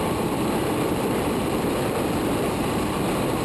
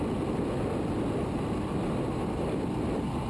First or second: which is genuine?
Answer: second